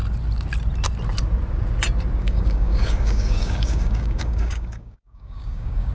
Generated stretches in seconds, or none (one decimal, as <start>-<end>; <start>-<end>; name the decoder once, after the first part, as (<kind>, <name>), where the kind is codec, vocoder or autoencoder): 2.2-5.9 (codec, DAC)